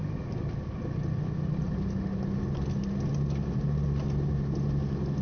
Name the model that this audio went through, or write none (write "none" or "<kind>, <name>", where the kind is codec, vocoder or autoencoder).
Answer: none